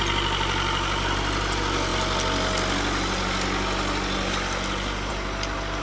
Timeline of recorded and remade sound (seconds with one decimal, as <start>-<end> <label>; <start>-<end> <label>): 0.0-5.8 recorded